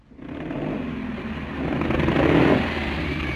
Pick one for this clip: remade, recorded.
recorded